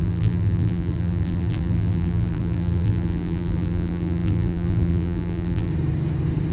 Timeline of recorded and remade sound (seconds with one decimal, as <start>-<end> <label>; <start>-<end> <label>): 0.0-5.7 remade; 5.7-6.5 recorded